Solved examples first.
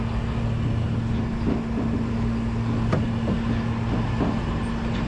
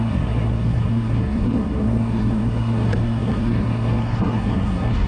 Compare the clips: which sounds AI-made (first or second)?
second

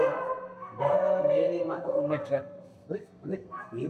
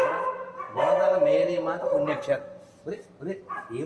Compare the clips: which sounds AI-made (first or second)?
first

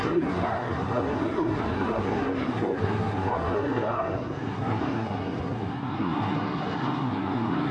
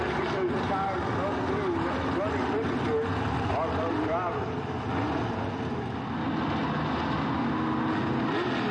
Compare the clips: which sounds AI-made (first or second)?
first